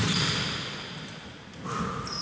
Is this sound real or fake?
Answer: real